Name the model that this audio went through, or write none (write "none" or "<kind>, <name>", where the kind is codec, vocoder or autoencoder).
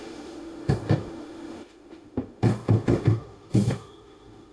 autoencoder, DAC-VAE